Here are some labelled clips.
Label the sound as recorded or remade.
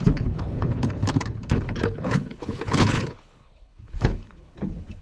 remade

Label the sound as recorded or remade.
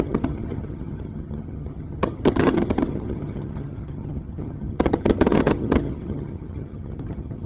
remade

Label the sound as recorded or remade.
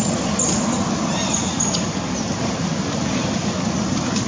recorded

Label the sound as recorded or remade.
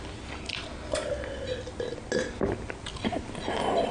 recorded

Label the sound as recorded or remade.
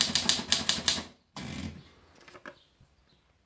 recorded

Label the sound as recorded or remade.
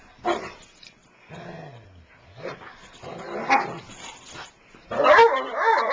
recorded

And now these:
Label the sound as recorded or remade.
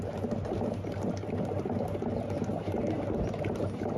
recorded